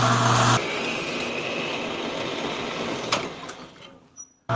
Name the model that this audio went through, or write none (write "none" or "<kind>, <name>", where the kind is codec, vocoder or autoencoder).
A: none